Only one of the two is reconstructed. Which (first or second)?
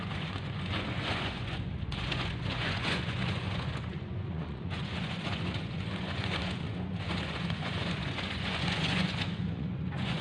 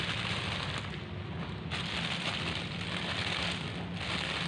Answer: first